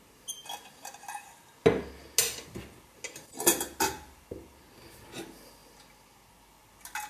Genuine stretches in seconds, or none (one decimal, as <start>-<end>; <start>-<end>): 0.0-7.1